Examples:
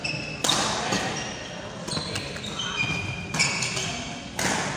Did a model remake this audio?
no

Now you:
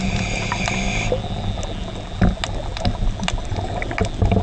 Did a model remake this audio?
no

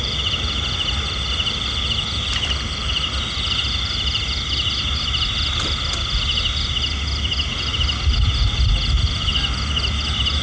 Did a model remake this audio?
no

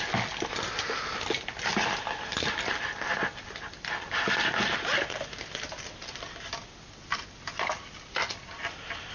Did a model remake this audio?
no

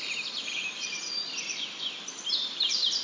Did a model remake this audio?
yes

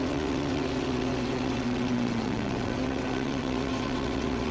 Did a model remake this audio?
yes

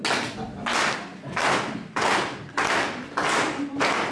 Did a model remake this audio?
no